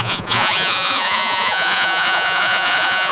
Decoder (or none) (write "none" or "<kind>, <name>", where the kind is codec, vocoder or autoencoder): vocoder, Vocos